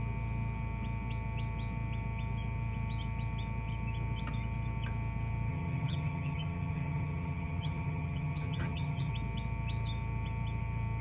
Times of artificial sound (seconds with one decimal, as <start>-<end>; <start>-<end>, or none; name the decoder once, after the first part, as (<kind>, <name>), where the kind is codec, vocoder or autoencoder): 5.5-9.1 (vocoder, HiFi-GAN)